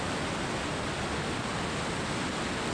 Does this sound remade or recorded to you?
recorded